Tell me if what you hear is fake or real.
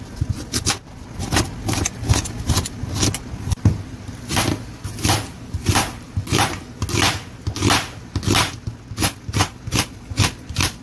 real